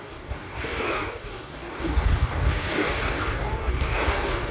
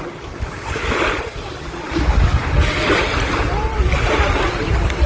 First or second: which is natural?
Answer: second